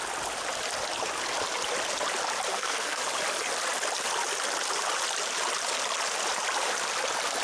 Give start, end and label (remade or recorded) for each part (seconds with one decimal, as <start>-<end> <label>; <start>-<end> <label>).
0.0-2.5 recorded; 2.5-3.0 remade; 3.0-7.4 recorded

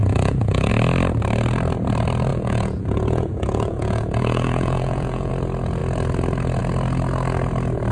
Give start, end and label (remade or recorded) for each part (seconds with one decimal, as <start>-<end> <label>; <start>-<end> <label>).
0.0-0.7 remade; 0.7-2.3 recorded; 2.3-5.3 remade; 5.3-7.9 recorded

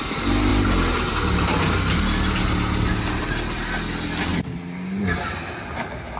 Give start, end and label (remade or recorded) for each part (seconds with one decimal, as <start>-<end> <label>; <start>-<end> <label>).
0.0-6.2 recorded

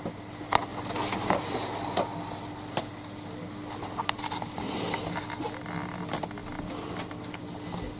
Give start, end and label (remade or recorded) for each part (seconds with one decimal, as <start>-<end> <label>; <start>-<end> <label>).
0.0-8.0 recorded

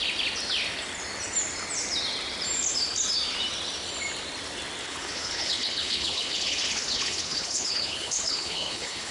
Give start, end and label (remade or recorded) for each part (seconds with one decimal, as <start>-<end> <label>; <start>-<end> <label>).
0.0-4.8 recorded; 4.8-9.1 remade

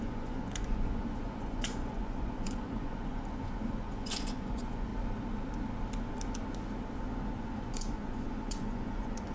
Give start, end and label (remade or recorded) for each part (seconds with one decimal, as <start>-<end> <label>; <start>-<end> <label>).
0.0-4.9 remade; 4.9-7.4 recorded; 7.4-9.3 remade

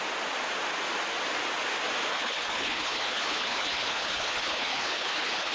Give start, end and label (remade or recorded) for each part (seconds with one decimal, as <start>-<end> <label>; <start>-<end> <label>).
0.0-2.1 recorded; 2.1-5.5 remade